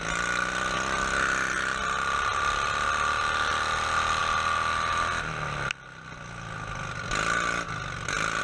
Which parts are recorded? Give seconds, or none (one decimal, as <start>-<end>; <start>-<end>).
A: 0.0-8.4